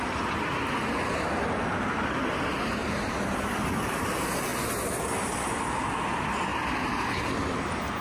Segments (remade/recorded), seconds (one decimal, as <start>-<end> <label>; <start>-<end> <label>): 0.0-2.8 recorded; 2.8-3.4 remade; 3.4-8.0 recorded